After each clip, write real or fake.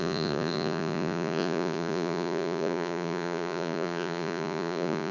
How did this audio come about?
fake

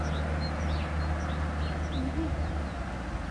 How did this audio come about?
real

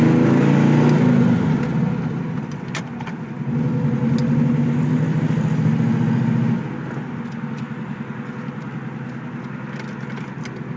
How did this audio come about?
real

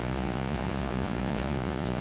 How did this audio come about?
fake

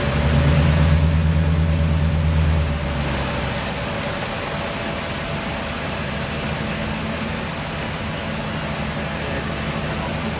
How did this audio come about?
real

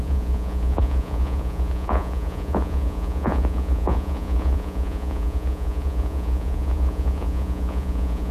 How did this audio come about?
fake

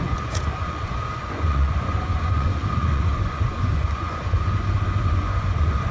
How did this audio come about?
fake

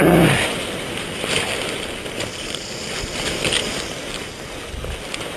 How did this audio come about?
real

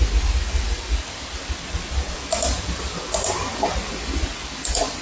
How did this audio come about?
real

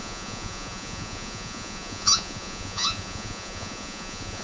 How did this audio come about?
fake